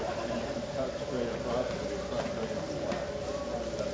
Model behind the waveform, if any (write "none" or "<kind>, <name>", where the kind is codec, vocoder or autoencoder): none